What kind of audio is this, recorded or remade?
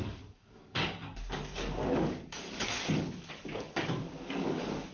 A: remade